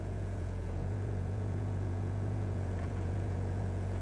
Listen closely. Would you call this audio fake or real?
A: fake